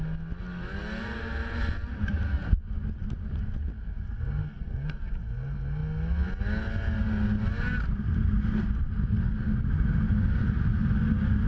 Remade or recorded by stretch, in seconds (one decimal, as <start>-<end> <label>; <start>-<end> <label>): 0.0-4.4 recorded; 4.4-5.1 remade; 5.1-11.5 recorded